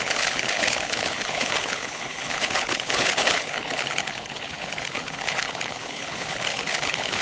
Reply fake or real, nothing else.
fake